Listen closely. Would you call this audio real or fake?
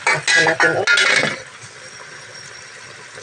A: real